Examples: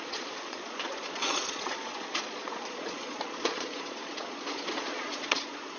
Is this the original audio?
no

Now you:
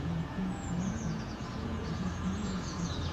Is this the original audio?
no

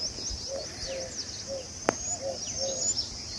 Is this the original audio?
yes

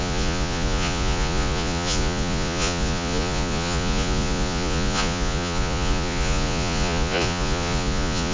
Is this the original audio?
no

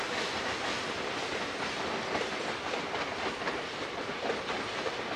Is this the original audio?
yes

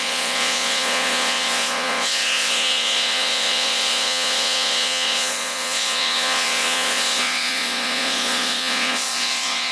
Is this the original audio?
no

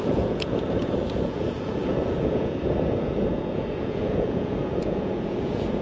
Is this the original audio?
no